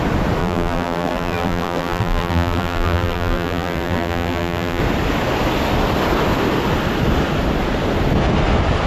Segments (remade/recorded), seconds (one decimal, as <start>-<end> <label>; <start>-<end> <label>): 0.0-0.4 recorded; 0.4-4.8 remade; 4.8-8.9 recorded